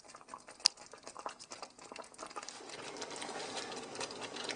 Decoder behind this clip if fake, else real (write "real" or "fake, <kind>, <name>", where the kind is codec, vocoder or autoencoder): real